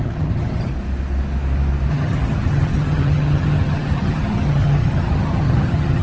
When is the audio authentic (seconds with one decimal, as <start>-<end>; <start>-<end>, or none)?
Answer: 0.7-1.9